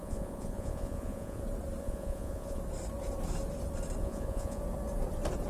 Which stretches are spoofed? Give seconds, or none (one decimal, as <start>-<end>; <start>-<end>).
0.0-1.4; 1.8-2.6; 4.0-4.6